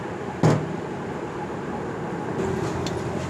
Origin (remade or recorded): recorded